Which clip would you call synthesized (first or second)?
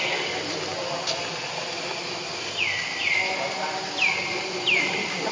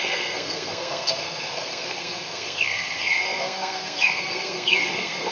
second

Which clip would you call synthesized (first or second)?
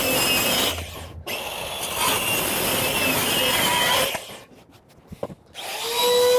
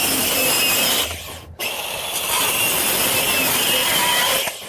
second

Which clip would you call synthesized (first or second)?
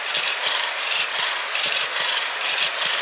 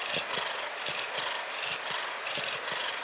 first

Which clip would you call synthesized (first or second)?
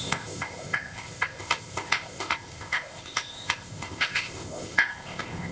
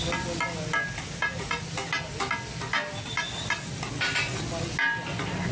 first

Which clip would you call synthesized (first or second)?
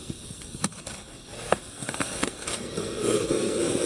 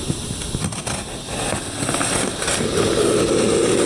first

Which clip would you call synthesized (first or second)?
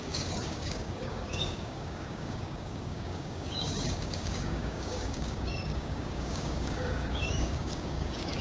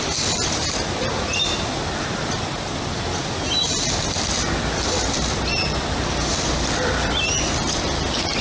first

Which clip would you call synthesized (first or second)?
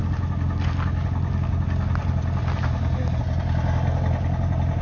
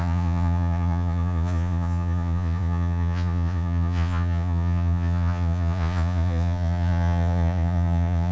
second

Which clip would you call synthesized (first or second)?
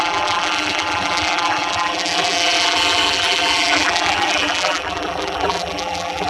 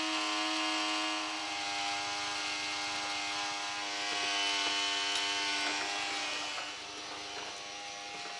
first